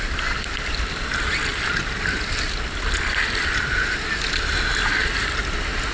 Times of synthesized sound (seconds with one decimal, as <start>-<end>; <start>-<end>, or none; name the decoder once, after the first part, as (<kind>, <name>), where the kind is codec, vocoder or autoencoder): none